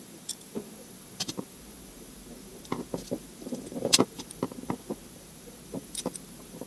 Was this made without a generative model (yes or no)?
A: no